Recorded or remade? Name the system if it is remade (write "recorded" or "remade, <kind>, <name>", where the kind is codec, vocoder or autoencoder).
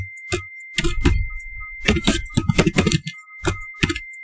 recorded